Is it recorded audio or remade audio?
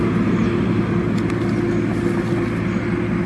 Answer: recorded